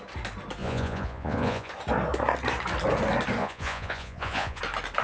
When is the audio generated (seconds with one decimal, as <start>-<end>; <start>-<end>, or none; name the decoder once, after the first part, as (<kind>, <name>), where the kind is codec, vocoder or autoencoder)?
0.6-1.7 (vocoder, Vocos); 3.4-4.6